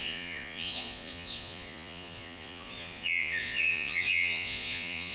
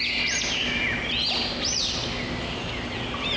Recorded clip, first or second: second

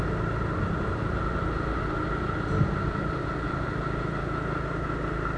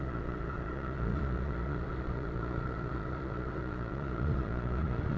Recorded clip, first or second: first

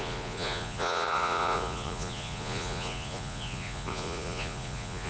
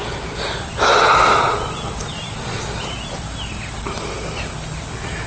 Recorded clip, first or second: second